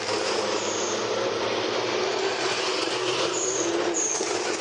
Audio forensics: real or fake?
real